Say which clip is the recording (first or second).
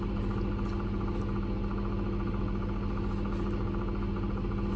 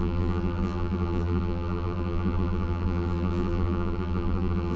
first